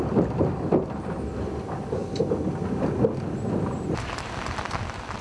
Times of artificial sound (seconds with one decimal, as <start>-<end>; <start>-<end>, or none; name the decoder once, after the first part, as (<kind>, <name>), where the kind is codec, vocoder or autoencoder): none